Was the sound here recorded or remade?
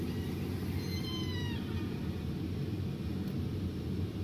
recorded